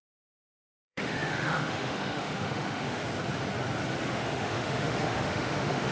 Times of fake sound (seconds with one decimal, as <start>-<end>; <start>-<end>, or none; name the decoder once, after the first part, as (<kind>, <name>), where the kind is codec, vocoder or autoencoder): 0.0-3.0 (autoencoder, DAC-VAE); 4.1-5.9